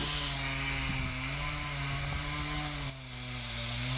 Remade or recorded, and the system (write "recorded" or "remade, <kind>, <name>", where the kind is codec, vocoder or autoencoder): recorded